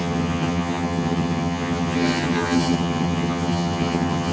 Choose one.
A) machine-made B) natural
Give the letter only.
A